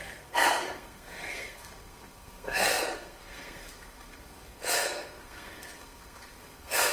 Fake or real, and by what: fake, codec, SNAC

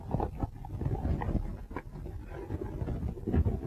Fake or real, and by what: real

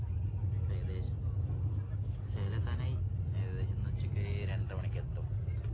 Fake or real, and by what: real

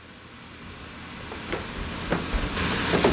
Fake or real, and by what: real